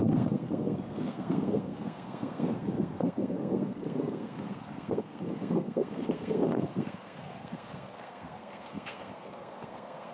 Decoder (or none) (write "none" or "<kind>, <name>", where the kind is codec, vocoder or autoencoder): codec, SNAC